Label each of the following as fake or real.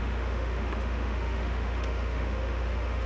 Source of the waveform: fake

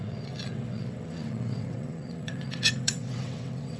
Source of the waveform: fake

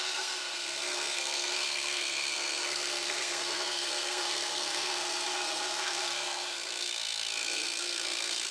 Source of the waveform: fake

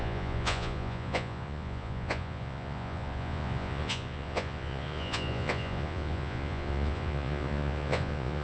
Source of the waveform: fake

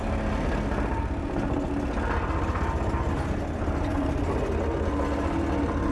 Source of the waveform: real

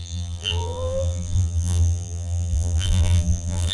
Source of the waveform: fake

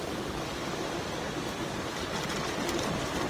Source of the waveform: real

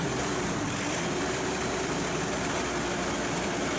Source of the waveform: fake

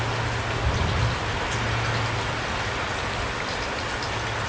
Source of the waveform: real